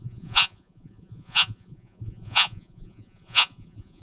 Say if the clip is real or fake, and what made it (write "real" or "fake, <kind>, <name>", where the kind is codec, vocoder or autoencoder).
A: fake, vocoder, Vocos